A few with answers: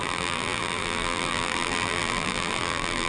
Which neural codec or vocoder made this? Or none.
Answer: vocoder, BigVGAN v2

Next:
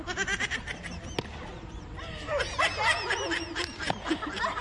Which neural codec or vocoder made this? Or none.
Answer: none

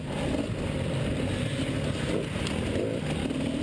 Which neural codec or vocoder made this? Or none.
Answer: none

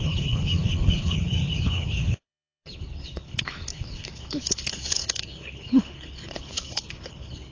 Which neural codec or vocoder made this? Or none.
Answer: codec, HILCodec